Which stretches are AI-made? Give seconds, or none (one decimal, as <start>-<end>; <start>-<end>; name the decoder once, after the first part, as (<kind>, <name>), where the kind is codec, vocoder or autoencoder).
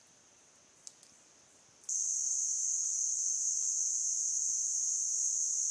2.6-3.2 (codec, HILCodec)